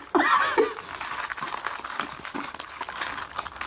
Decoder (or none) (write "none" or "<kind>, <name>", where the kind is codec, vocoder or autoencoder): none